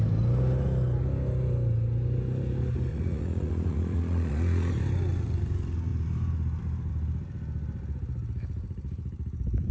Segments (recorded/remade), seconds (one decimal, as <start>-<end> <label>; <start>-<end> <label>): 0.0-2.9 recorded; 2.9-4.7 remade; 4.7-9.7 recorded